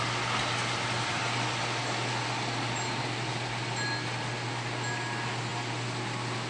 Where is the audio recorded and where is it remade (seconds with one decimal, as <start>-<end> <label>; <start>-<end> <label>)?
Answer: 0.0-6.5 recorded